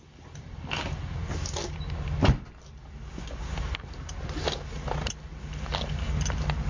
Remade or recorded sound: recorded